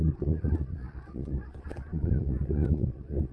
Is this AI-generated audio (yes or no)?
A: yes